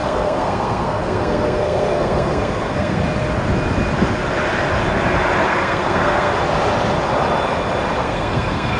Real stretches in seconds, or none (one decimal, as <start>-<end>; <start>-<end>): 3.0-5.4; 6.3-8.0